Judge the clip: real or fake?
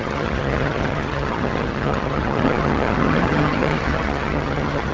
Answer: fake